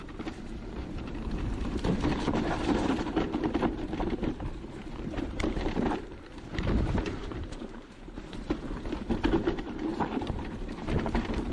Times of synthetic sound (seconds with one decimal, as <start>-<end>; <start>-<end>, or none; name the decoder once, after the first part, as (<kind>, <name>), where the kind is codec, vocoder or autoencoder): 0.0-11.5 (vocoder, BigVGAN v2)